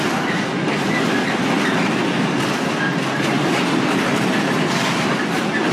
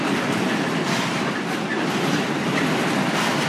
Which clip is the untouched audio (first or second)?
first